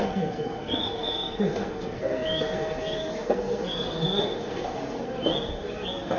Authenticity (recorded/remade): remade